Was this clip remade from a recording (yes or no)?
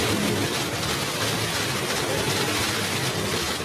no